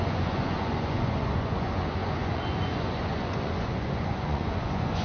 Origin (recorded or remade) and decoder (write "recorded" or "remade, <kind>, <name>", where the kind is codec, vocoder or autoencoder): remade, vocoder, Vocos